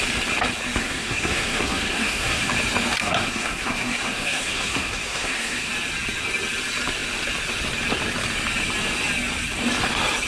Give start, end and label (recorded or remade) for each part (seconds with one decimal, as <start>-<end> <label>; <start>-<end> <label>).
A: 0.0-0.8 recorded; 0.8-2.5 remade; 2.5-3.0 recorded; 3.0-5.7 remade; 5.7-10.3 recorded

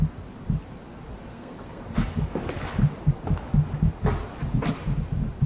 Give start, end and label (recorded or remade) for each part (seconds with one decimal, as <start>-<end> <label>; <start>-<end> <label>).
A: 0.0-1.3 recorded; 1.3-1.8 remade; 1.8-5.5 recorded

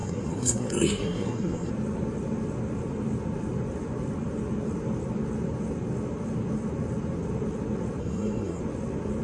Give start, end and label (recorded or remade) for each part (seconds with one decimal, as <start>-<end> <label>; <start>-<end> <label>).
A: 0.0-1.7 remade; 1.7-8.0 recorded; 8.0-8.6 remade; 8.6-9.2 recorded

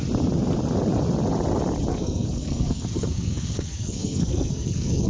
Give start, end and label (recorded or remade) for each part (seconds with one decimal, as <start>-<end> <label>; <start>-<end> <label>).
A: 0.0-1.9 recorded; 1.9-5.1 remade

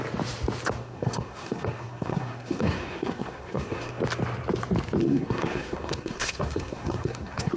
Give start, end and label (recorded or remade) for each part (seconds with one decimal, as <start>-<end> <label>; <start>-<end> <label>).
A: 0.0-0.8 recorded; 0.8-4.0 remade; 4.0-5.0 recorded; 5.0-7.6 remade

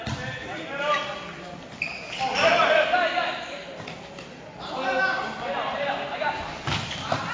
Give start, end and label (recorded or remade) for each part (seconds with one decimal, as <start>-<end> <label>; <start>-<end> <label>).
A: 0.0-7.3 recorded